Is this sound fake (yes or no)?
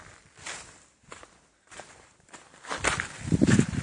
yes